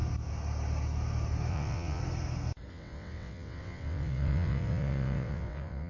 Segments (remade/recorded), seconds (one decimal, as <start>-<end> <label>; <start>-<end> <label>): 0.0-1.5 recorded; 1.5-2.0 remade; 2.0-2.7 recorded; 2.7-5.9 remade